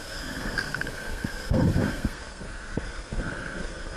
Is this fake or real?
fake